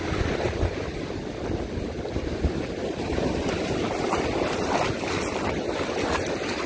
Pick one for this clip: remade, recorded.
recorded